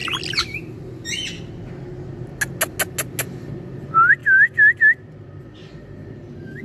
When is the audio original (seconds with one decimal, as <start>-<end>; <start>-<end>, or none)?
0.0-3.4; 4.2-5.4